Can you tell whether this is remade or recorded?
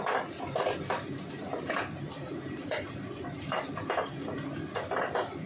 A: recorded